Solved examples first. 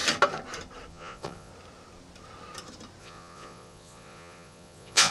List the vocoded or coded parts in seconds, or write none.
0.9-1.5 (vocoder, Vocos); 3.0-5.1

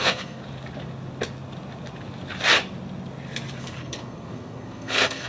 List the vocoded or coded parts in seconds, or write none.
0.0-0.4 (codec, SNAC); 3.6-5.3

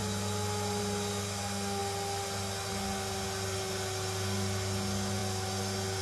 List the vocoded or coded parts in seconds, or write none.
none

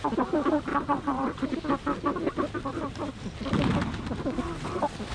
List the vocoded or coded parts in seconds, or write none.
0.7-1.5 (vocoder, WaveNeXt)